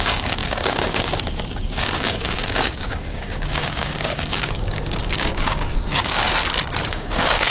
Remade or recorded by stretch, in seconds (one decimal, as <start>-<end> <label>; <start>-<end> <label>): 0.0-6.3 remade; 6.3-6.9 recorded; 6.9-7.5 remade